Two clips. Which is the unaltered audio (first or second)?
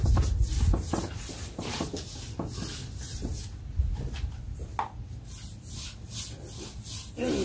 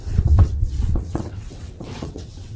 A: first